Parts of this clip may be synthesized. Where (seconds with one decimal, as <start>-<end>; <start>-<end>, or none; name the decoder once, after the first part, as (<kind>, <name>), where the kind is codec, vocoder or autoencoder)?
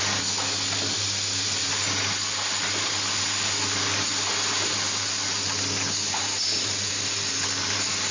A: none